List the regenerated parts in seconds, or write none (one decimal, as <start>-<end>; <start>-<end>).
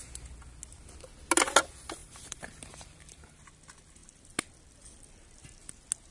2.0-3.5